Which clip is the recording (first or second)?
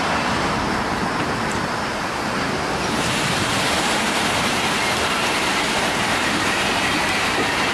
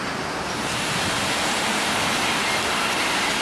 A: second